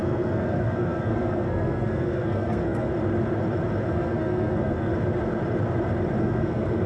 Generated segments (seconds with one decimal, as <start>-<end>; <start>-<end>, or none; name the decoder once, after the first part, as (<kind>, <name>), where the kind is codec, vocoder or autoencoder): 0.0-2.9 (codec, SNAC); 3.9-4.9; 6.2-6.9